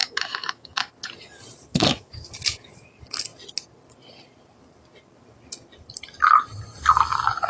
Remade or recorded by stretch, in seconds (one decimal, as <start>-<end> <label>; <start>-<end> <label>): 0.0-0.9 remade; 0.9-1.7 recorded; 1.7-2.7 remade; 2.7-7.5 recorded